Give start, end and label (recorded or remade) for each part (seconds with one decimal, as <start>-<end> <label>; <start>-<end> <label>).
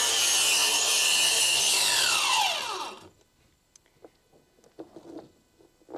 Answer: 0.0-6.0 recorded